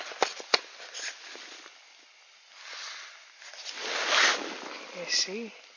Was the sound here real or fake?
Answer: real